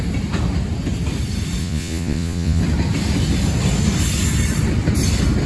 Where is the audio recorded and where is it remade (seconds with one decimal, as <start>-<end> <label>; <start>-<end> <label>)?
0.0-1.6 recorded; 1.6-2.6 remade; 2.6-5.5 recorded